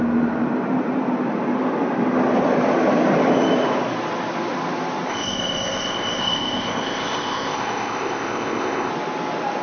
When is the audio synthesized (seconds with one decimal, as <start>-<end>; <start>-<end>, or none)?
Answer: 5.1-8.9